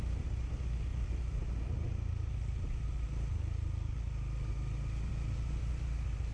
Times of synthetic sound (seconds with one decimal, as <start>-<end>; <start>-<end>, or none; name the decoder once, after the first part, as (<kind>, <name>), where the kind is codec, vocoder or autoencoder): none